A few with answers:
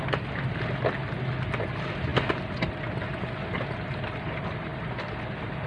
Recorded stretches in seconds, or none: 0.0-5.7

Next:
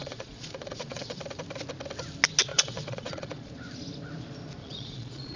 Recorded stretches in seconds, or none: 1.2-2.5; 3.5-4.6

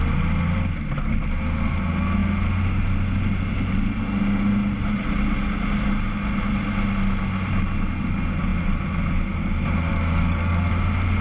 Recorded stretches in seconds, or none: 0.0-9.9; 10.7-11.2

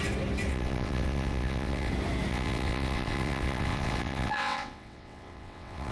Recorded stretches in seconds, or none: 0.0-0.5; 1.9-2.3